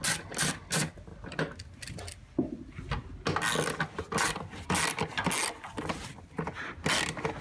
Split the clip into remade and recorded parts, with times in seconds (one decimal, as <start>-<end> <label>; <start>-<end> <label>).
0.0-7.4 recorded